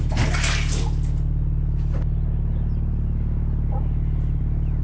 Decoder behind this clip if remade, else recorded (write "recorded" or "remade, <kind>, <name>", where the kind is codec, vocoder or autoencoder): recorded